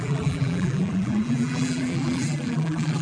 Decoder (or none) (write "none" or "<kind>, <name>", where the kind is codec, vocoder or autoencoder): vocoder, BigVGAN v2